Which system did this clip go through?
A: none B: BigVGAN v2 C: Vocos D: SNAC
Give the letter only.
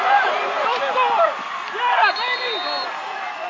A